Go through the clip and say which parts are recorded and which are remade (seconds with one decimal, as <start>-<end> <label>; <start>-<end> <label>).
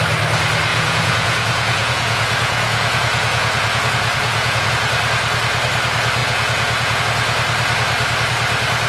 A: 0.0-0.7 recorded; 0.7-4.7 remade; 4.7-6.2 recorded; 6.2-7.0 remade; 7.0-8.9 recorded